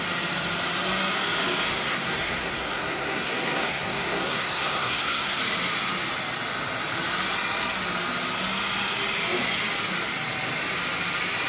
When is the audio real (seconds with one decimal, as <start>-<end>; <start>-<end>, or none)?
0.0-1.7; 5.4-11.5